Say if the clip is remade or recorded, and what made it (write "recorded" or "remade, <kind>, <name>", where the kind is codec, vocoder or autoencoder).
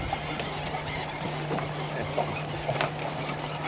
recorded